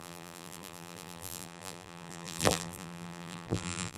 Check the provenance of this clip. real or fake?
fake